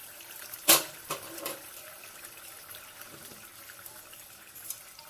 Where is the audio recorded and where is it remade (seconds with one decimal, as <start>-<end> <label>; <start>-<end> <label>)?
0.0-5.1 remade